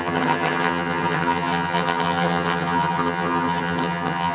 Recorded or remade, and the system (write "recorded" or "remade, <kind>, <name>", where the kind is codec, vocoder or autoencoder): remade, vocoder, HiFi-GAN